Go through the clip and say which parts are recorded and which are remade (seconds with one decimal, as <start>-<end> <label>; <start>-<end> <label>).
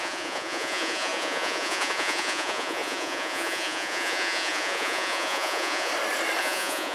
0.0-5.9 remade; 5.9-6.4 recorded; 6.4-6.9 remade